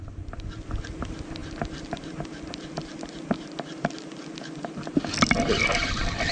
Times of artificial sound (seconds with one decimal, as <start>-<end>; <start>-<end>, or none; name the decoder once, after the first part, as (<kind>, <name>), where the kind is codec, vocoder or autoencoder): none